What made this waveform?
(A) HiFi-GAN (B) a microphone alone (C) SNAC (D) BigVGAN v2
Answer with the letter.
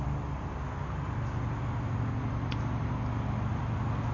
B